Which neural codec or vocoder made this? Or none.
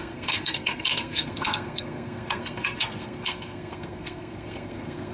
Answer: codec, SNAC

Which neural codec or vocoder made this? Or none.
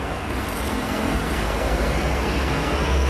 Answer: codec, SNAC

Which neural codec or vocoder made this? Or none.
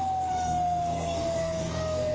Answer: codec, SNAC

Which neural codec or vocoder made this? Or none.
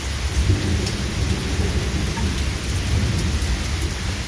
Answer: none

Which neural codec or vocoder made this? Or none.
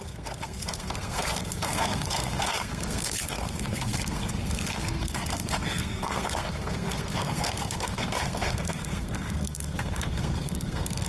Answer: codec, SNAC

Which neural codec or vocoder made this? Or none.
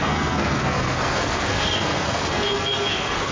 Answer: codec, SNAC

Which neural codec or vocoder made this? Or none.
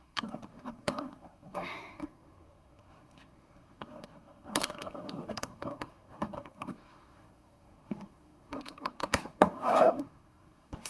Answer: codec, SNAC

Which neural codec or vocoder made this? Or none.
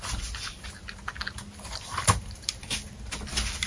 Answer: none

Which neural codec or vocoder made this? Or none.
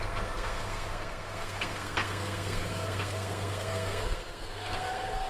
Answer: codec, SNAC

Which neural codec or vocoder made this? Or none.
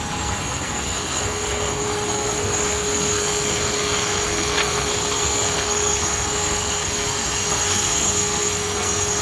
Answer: codec, SNAC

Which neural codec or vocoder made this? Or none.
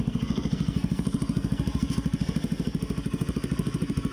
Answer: codec, SNAC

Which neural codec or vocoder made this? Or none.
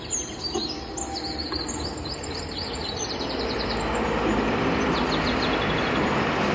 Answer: none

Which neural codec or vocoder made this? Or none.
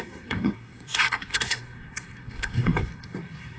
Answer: codec, SNAC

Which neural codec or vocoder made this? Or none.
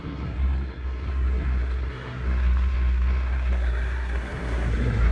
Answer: codec, SNAC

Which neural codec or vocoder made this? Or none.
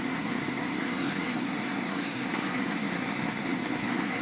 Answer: codec, SNAC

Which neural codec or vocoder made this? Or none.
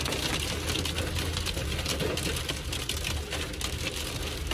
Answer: none